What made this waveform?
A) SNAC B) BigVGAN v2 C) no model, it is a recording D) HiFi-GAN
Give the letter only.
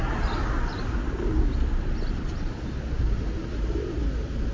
C